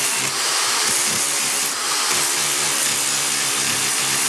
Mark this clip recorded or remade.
recorded